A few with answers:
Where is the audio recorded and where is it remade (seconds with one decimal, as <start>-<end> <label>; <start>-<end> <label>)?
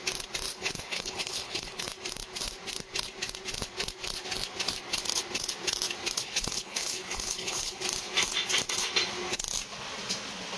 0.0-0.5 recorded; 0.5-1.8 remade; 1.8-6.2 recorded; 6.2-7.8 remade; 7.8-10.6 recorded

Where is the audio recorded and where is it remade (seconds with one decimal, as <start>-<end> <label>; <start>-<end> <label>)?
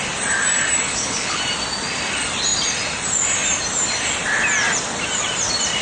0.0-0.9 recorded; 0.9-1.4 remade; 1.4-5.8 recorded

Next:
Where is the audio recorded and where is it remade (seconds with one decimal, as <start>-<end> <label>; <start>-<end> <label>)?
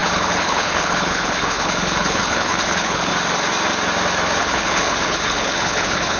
0.0-3.1 remade; 3.1-4.4 recorded; 4.4-6.2 remade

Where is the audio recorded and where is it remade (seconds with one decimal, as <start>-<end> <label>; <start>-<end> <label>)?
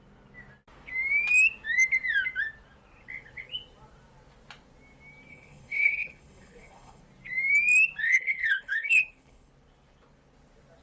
0.0-5.3 recorded; 5.3-7.0 remade; 7.0-8.0 recorded; 8.0-9.5 remade; 9.5-10.8 recorded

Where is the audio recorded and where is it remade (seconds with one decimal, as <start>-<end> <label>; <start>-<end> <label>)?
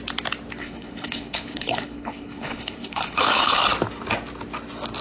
0.0-0.6 recorded; 0.6-3.6 remade; 3.6-5.0 recorded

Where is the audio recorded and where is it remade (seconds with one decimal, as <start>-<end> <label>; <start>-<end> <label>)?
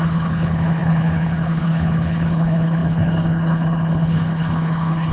0.0-5.1 remade